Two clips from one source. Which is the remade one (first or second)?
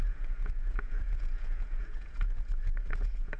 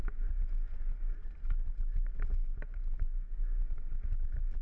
first